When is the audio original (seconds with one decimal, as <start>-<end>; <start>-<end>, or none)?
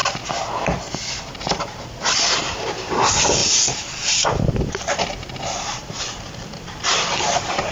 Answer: 0.0-1.6